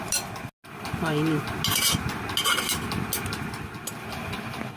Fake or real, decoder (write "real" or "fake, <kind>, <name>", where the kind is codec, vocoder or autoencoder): real